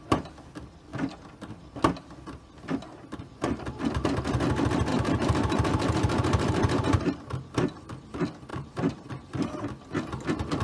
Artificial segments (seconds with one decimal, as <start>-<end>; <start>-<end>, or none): 4.9-7.3; 8.5-9.1